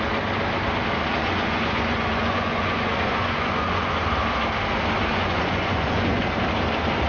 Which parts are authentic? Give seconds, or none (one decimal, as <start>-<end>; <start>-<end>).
0.0-1.2; 3.9-5.1; 6.2-7.1